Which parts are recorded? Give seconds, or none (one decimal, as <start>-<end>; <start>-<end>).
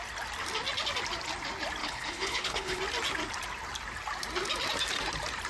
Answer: 0.0-1.8; 2.8-5.5